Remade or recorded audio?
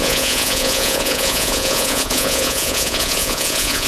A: remade